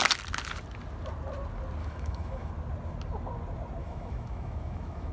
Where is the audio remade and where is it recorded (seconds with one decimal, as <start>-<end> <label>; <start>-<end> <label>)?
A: 0.0-1.8 recorded; 1.8-2.5 remade; 2.5-3.8 recorded; 3.8-5.1 remade